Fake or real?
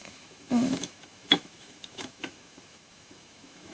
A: fake